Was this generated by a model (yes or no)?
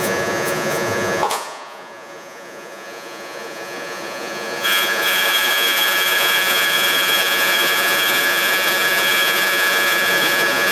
yes